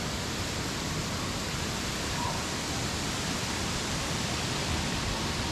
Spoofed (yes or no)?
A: no